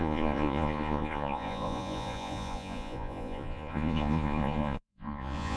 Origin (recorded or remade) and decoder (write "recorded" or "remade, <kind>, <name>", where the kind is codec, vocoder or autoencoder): remade, vocoder, Vocos